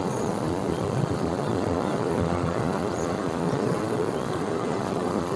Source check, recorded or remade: remade